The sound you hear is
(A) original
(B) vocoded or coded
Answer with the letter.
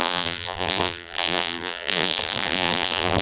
B